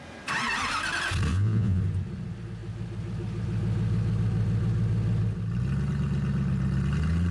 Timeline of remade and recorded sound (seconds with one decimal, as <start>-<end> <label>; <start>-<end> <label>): 0.0-1.3 recorded; 1.3-1.8 remade; 1.8-7.3 recorded

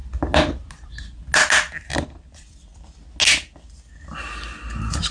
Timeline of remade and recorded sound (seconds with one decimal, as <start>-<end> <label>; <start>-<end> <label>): 0.0-5.1 recorded